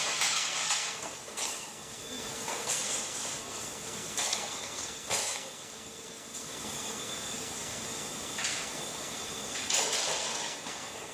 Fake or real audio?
fake